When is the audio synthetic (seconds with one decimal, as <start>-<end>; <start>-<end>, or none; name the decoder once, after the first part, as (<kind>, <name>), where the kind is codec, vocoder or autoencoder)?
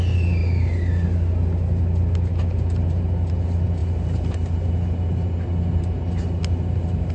3.8-4.7 (vocoder, BigVGAN v2)